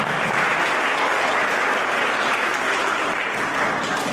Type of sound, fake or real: real